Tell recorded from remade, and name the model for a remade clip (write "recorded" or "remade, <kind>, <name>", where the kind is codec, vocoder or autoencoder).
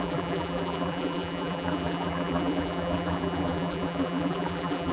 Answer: remade, vocoder, BigVGAN v2